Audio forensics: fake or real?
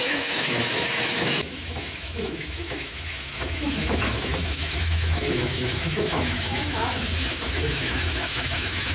fake